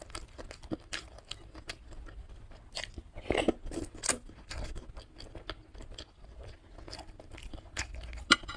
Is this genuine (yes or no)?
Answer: yes